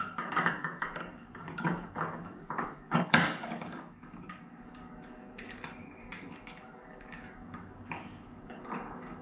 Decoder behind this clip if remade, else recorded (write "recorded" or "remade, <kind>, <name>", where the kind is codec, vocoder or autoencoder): remade, codec, DAC